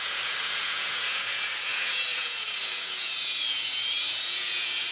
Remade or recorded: remade